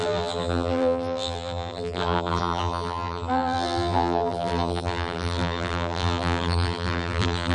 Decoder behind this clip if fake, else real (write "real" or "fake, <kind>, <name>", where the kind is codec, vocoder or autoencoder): fake, vocoder, BigVGAN v2